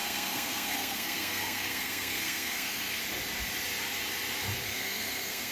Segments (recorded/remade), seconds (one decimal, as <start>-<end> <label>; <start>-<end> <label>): 0.0-3.0 remade; 3.0-4.7 recorded; 4.7-5.5 remade